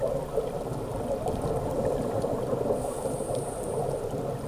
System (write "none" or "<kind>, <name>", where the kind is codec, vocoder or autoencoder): none